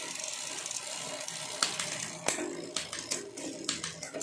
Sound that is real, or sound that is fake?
real